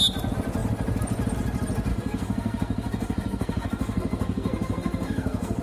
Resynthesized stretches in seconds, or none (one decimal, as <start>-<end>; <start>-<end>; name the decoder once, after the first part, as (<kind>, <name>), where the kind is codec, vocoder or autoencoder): 1.9-5.6 (codec, SNAC)